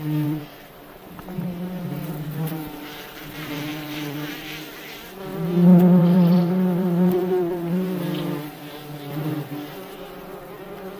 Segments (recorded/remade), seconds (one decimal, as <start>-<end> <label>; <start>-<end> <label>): 0.0-5.3 remade; 5.3-6.0 recorded; 6.0-11.0 remade